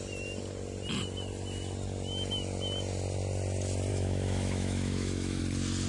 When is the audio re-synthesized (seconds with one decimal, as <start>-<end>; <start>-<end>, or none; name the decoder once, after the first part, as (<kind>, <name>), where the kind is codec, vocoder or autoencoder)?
3.9-5.4 (autoencoder, DAC-VAE)